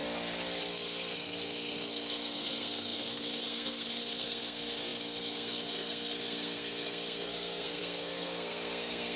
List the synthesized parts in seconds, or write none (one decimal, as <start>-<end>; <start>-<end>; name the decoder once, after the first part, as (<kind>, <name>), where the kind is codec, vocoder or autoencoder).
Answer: 0.7-9.2 (codec, SNAC)